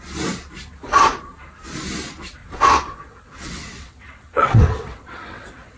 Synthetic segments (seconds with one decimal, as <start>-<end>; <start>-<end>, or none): 2.4-5.8